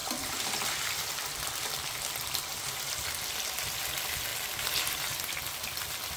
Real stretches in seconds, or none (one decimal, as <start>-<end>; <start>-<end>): 4.3-5.8